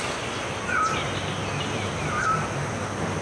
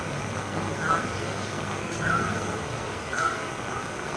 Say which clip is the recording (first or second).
first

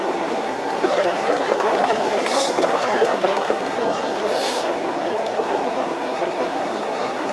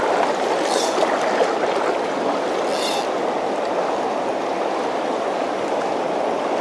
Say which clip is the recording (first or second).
second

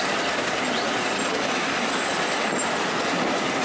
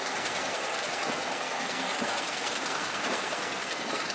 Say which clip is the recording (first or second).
first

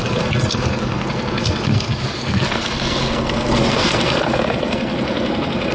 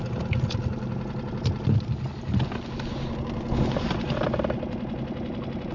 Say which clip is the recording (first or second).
second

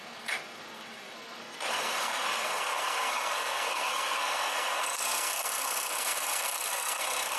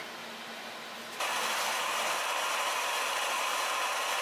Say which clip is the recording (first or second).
second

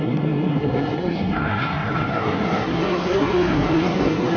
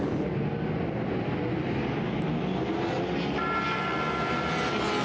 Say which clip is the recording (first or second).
second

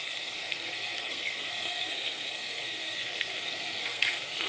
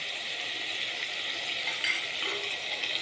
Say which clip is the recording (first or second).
second